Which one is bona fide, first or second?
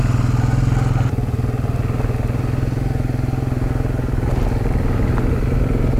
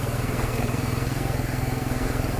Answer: first